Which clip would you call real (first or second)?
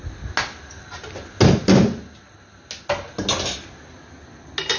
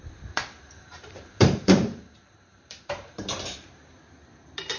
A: first